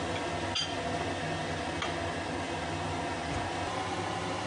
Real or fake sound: real